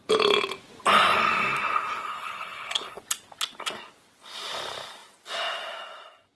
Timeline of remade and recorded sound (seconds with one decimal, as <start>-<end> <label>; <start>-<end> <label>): 0.0-2.1 recorded; 2.1-3.0 remade; 3.0-6.4 recorded